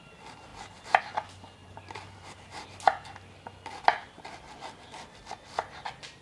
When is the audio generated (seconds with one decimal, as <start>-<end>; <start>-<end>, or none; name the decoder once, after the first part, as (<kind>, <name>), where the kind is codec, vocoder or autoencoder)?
1.6-2.7 (vocoder, BigVGAN v2)